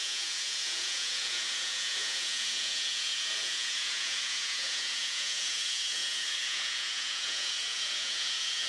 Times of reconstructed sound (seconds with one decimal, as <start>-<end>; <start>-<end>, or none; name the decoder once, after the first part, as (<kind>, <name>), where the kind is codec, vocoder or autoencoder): 0.0-8.7 (vocoder, Vocos)